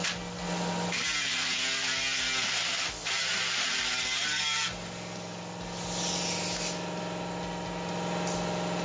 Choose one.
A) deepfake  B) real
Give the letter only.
B